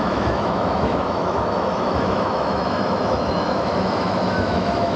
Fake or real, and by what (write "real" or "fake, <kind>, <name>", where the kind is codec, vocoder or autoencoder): fake, autoencoder, DAC-VAE